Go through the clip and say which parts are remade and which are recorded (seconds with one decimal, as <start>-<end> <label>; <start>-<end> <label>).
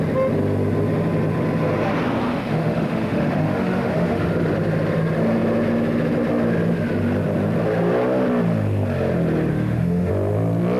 0.0-2.5 recorded; 2.5-4.3 remade; 4.3-9.5 recorded; 9.5-10.1 remade; 10.1-10.8 recorded